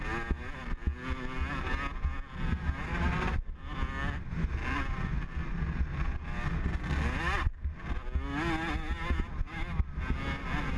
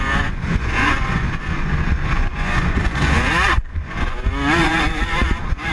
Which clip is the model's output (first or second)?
second